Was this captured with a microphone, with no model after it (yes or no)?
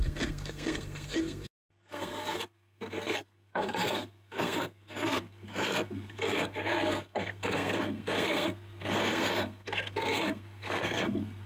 no